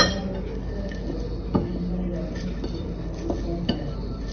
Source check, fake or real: real